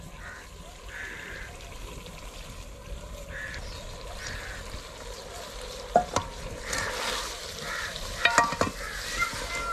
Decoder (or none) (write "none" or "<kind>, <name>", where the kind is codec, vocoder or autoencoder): none